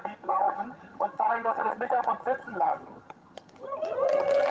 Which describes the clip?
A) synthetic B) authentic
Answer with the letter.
A